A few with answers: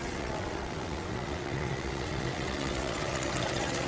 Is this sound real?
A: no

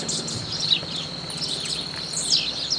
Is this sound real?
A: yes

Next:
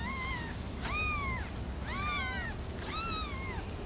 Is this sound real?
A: yes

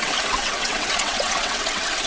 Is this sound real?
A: no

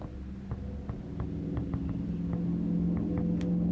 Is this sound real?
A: yes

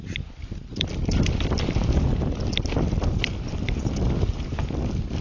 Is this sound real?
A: yes